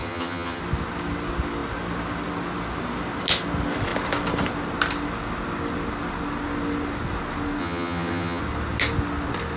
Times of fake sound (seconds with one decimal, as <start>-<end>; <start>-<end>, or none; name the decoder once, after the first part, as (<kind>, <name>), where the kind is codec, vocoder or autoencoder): 0.0-0.6 (vocoder, HiFi-GAN); 7.6-8.4